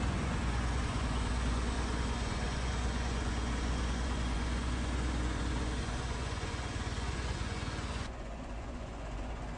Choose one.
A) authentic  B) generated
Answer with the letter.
B